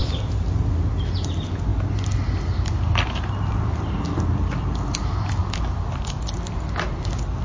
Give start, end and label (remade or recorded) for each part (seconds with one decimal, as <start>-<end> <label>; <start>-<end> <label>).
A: 0.0-7.4 recorded